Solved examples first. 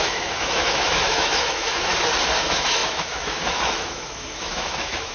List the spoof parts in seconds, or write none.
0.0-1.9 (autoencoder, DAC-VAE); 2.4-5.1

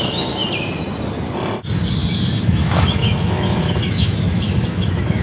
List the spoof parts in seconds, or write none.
0.0-0.4 (autoencoder, DAC-VAE); 2.4-5.2

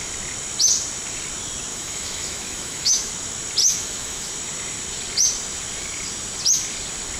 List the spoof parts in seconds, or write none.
1.7-3.1 (autoencoder, DAC-VAE); 3.6-4.3